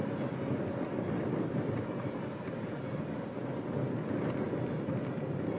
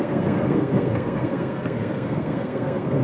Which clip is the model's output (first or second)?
second